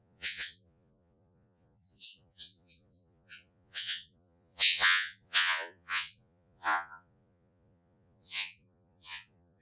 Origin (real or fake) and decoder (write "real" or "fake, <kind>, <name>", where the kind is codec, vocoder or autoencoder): fake, vocoder, Vocos